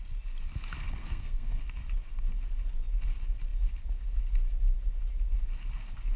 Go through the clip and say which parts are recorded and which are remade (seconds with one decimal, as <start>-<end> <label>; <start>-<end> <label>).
0.0-1.0 recorded; 1.0-1.6 remade; 1.6-6.2 recorded